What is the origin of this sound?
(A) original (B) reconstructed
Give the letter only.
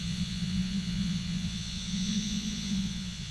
B